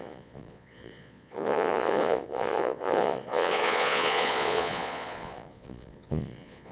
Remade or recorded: remade